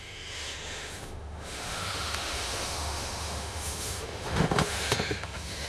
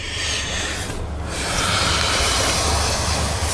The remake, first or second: first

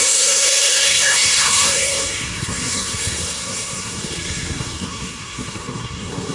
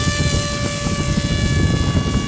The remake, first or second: first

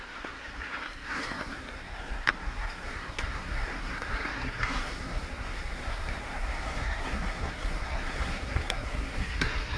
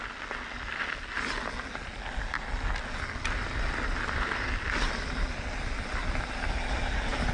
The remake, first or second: first